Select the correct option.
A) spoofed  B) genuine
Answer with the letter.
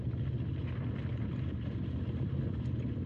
B